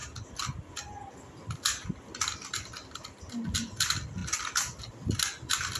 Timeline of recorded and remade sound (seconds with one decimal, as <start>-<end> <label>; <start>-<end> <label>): 0.0-5.8 recorded